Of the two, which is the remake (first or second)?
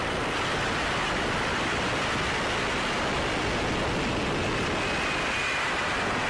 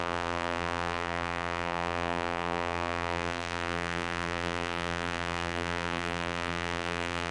second